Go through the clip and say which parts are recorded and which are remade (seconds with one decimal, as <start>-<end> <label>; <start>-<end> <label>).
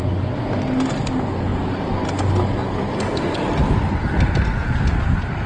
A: 0.0-5.5 recorded